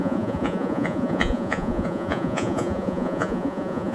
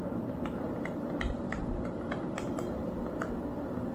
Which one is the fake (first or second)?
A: first